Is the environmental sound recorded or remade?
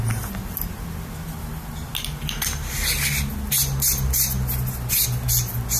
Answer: recorded